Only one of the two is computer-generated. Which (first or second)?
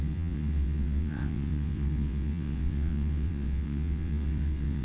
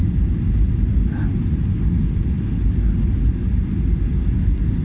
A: first